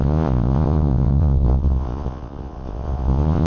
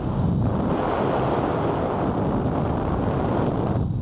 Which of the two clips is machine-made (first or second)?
first